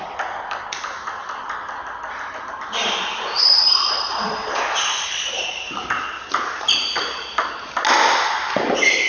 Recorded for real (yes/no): yes